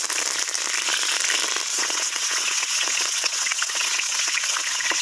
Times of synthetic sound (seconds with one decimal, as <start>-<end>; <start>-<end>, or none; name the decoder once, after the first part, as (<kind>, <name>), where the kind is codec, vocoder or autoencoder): 1.7-5.0 (vocoder, WaveNeXt)